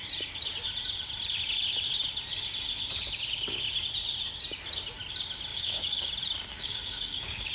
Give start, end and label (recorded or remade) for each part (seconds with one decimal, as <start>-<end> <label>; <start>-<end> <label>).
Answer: 0.0-5.5 recorded; 5.5-6.1 remade; 6.1-6.5 recorded; 6.5-7.5 remade